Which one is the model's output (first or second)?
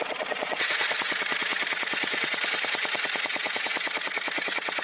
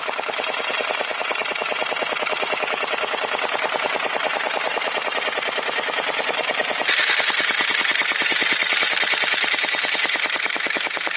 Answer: first